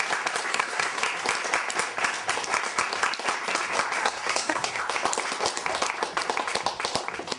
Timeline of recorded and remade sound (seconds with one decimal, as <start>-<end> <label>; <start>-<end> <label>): 0.0-0.5 recorded; 0.5-1.0 remade; 1.0-4.0 recorded; 4.0-4.8 remade; 4.8-7.4 recorded